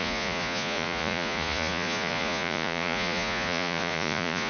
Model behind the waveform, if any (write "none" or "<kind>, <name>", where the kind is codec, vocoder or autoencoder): vocoder, Vocos